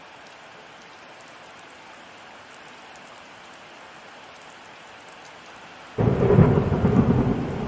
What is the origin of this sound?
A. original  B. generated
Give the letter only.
A